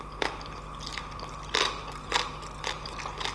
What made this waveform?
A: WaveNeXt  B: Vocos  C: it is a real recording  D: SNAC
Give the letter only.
C